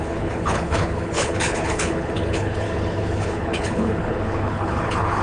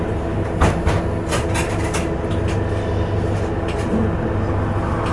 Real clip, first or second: second